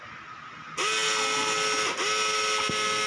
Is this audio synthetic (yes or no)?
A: no